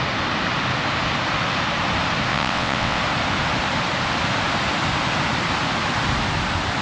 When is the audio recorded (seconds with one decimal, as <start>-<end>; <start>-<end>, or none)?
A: 0.0-2.3; 3.0-6.8